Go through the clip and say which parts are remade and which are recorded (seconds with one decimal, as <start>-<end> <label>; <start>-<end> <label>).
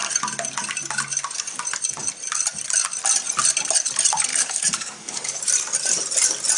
0.0-4.3 recorded; 4.3-5.4 remade; 5.4-6.6 recorded